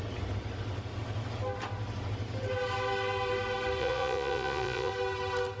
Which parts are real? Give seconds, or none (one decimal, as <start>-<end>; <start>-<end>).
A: 0.0-3.8; 4.9-5.6